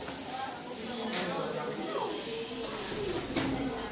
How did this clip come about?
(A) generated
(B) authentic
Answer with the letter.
B